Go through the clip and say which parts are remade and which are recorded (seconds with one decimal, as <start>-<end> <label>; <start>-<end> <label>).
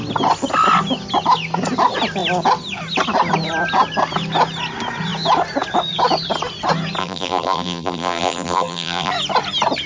0.0-7.0 recorded; 7.0-9.1 remade; 9.1-9.9 recorded